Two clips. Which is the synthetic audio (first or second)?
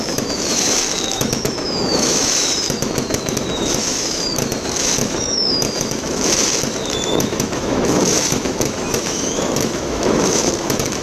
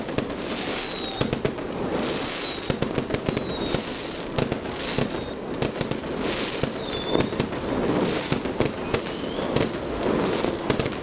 first